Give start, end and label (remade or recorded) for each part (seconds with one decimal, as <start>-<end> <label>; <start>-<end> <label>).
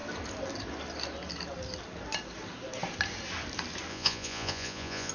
0.0-3.9 recorded; 3.9-5.1 remade